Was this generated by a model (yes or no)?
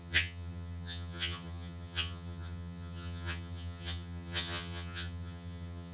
yes